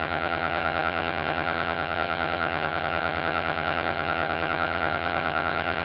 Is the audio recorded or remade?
remade